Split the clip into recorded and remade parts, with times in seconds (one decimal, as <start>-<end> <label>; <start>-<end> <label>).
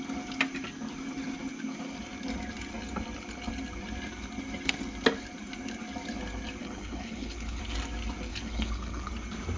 0.0-6.6 recorded; 6.6-7.6 remade; 7.6-8.3 recorded; 8.3-9.1 remade; 9.1-9.6 recorded